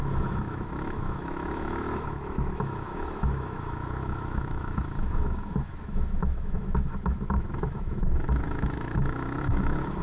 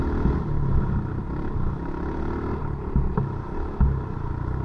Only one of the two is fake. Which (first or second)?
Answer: first